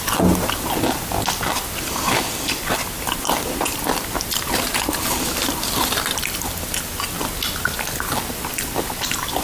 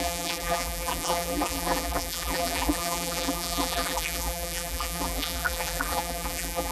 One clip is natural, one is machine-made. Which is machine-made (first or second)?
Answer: second